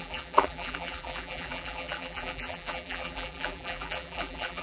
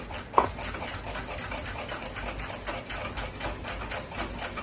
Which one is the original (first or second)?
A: second